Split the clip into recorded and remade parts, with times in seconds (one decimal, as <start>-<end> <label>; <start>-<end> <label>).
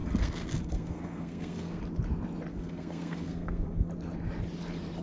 0.0-1.8 remade; 1.8-2.5 recorded; 2.5-3.9 remade; 3.9-5.0 recorded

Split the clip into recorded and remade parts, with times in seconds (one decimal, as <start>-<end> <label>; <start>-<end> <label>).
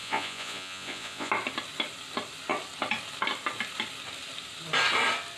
0.0-1.3 remade; 1.3-5.4 recorded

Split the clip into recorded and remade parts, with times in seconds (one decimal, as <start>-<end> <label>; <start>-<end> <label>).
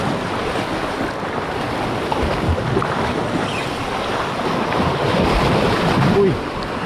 0.0-6.9 recorded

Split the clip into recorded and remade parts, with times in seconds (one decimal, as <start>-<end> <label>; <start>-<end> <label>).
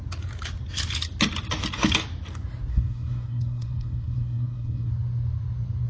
0.0-2.7 recorded; 2.7-4.9 remade; 4.9-5.9 recorded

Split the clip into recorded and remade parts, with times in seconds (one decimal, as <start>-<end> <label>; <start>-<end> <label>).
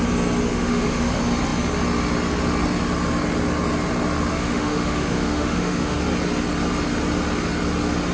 0.0-0.5 recorded; 0.5-1.1 remade; 1.1-4.3 recorded; 4.3-6.0 remade; 6.0-8.1 recorded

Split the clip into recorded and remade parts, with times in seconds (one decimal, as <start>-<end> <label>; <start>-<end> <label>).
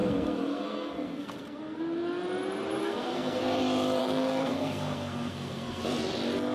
0.0-1.8 remade; 1.8-2.8 recorded; 2.8-3.6 remade; 3.6-4.0 recorded; 4.0-5.8 remade; 5.8-6.5 recorded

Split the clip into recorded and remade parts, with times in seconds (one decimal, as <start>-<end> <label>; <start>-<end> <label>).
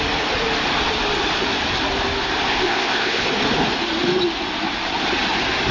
0.0-2.5 recorded; 2.5-3.3 remade; 3.3-5.7 recorded